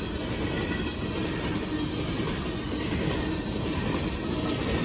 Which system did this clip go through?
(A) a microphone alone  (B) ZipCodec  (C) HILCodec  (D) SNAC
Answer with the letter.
A